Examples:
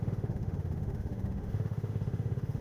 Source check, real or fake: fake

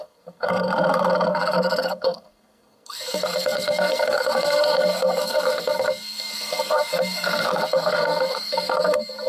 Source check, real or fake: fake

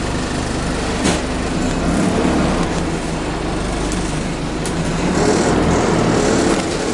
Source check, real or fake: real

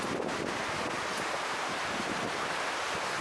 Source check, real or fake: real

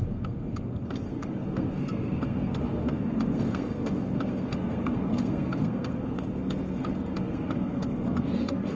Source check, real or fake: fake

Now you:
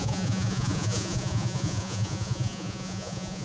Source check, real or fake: fake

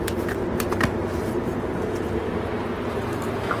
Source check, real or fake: fake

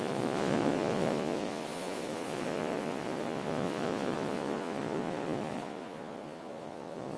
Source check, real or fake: fake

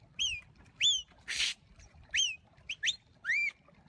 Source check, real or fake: real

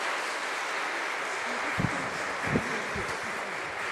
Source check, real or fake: real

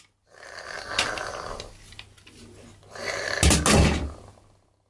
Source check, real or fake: real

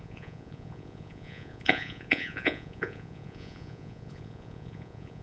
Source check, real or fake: fake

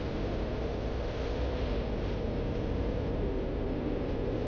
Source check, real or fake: real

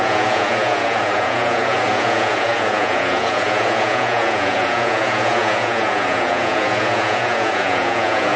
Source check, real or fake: fake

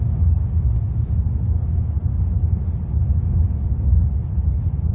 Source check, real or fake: real